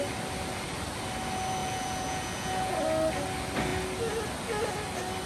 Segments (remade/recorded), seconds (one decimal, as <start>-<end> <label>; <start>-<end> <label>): 0.0-1.6 recorded; 1.6-2.7 remade; 2.7-5.3 recorded